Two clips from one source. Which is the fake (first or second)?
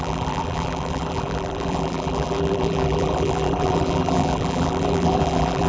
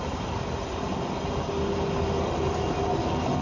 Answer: first